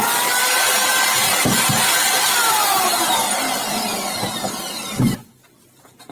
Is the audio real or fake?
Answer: real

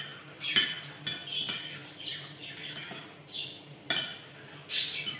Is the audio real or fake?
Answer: real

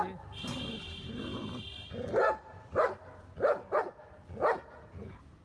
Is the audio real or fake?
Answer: real